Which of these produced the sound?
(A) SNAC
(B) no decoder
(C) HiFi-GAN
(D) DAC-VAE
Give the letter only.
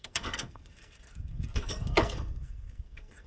A